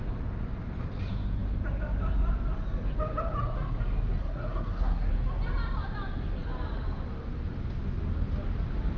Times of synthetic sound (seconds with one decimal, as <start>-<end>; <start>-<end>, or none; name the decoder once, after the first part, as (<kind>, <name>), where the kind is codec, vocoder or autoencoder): 4.2-5.1 (codec, SNAC)